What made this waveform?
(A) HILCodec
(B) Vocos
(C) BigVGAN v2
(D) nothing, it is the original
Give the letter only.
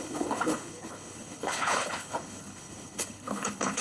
A